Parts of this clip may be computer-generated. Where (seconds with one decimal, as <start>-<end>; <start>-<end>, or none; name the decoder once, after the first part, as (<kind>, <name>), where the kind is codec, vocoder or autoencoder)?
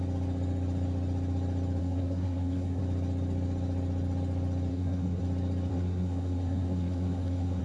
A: 1.8-2.8 (codec, SNAC); 4.7-5.2; 5.7-7.6